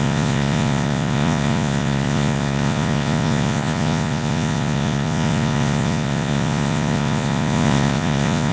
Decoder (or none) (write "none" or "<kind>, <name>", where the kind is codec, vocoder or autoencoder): vocoder, Vocos